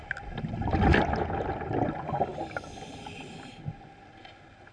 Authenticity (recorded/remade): recorded